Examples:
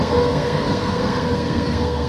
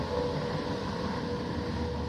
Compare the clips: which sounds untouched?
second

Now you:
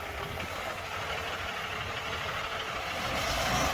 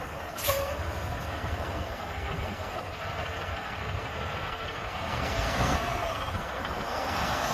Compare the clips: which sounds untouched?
first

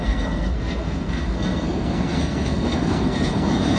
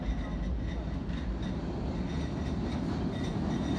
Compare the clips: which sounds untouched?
second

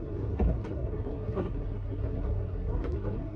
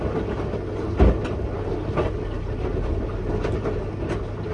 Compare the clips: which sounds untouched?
second